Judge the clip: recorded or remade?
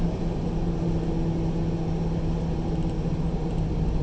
recorded